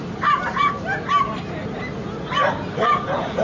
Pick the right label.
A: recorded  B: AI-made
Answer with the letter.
A